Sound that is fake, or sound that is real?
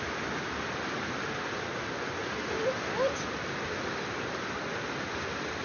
real